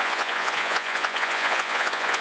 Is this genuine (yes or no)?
no